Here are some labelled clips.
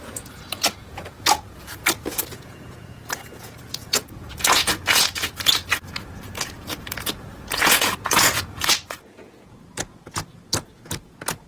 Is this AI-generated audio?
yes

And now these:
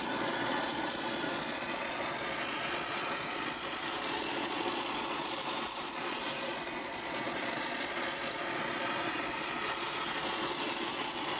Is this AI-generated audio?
yes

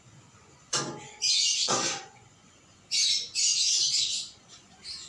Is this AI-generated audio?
yes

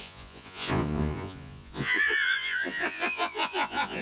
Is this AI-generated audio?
yes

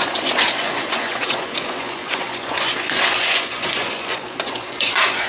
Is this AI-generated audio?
yes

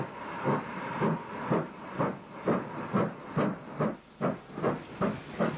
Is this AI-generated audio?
no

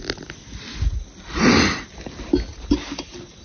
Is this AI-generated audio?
no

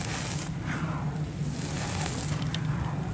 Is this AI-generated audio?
no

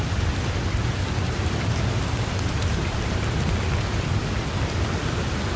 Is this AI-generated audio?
no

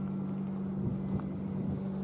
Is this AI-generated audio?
no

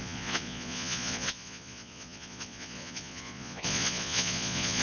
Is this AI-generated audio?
yes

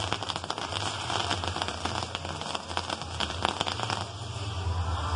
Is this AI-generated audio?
no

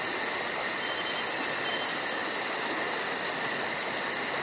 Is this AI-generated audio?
no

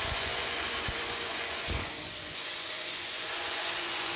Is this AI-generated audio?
yes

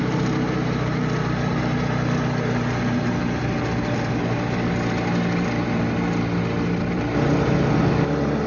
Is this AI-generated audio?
no